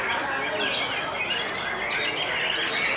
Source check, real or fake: real